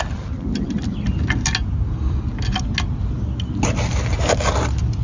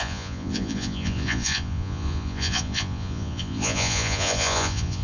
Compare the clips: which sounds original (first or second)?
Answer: first